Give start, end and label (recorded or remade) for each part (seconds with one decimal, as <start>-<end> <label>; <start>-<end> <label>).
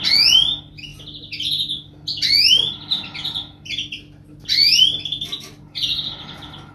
0.0-6.7 recorded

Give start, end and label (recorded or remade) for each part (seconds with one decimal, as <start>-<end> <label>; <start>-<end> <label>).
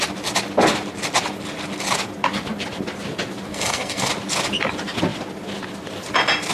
0.0-3.5 recorded; 3.5-4.1 remade; 4.1-6.5 recorded